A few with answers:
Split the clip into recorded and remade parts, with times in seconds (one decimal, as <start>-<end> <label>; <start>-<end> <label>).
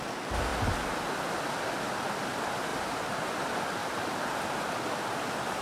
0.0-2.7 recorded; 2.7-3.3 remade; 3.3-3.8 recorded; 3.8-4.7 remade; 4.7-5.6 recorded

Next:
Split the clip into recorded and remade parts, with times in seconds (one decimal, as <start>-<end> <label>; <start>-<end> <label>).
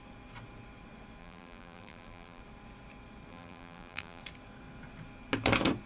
0.0-1.2 recorded; 1.2-2.4 remade; 2.4-3.3 recorded; 3.3-4.2 remade; 4.2-5.9 recorded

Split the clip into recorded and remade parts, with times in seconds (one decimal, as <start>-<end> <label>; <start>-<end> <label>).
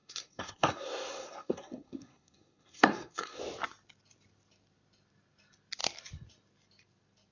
0.0-3.4 remade; 3.4-7.3 recorded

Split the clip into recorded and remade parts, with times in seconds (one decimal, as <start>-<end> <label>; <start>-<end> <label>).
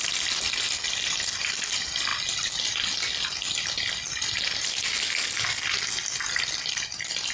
0.0-7.3 recorded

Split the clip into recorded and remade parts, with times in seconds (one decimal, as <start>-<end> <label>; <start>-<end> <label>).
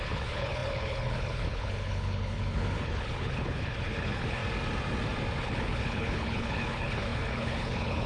0.0-4.4 remade; 4.4-5.4 recorded; 5.4-8.1 remade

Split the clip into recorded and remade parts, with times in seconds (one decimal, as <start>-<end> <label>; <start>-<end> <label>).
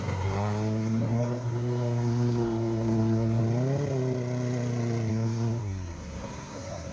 0.0-3.4 remade; 3.4-5.1 recorded; 5.1-6.9 remade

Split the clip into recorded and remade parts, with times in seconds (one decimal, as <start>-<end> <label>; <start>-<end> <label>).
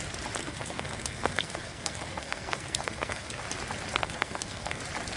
0.0-0.4 recorded; 0.4-3.4 remade; 3.4-4.0 recorded; 4.0-4.8 remade; 4.8-5.2 recorded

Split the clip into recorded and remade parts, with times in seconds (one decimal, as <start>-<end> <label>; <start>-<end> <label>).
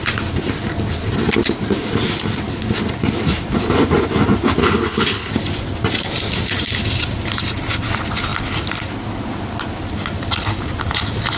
0.0-4.6 recorded; 4.6-5.3 remade; 5.3-11.4 recorded